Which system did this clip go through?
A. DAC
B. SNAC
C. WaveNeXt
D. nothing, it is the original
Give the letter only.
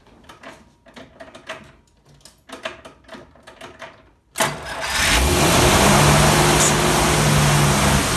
D